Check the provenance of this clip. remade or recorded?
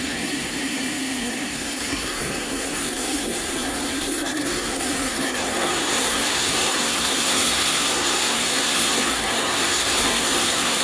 remade